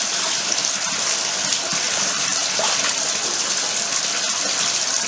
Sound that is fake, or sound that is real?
real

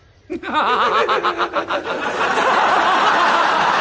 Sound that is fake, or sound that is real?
real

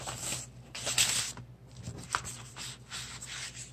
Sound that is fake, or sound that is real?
real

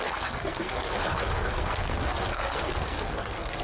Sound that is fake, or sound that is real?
fake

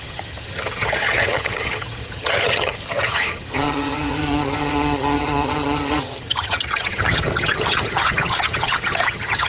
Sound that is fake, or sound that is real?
fake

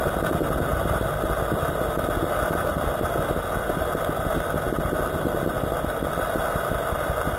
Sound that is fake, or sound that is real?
real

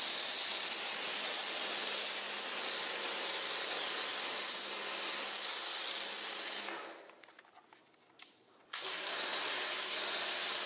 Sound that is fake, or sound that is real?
real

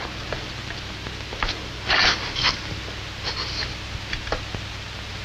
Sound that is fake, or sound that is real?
real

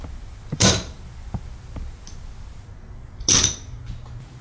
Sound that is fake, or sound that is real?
real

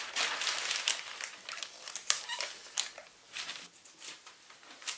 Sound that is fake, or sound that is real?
real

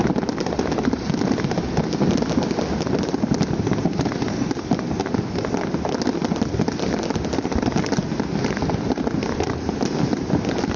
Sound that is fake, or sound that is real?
real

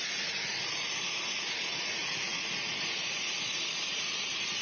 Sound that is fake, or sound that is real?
fake